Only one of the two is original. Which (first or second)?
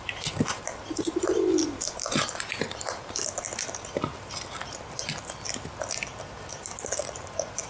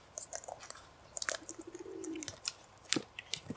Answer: first